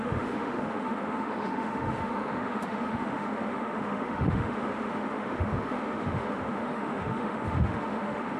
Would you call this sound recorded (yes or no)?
no